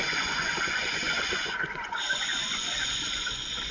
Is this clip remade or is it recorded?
remade